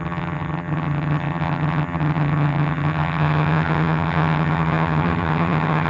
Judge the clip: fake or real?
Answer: fake